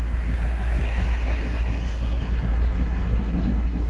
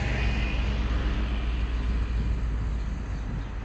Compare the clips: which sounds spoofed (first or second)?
first